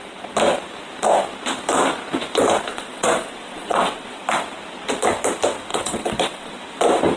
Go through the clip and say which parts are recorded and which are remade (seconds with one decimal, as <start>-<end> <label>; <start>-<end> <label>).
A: 0.0-2.7 recorded; 2.7-4.2 remade; 4.2-5.7 recorded; 5.7-6.5 remade; 6.5-7.2 recorded